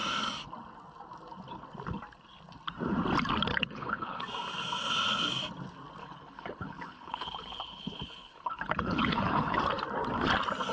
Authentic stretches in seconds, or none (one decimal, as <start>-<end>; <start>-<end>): 0.0-3.5; 4.2-6.0; 9.6-10.7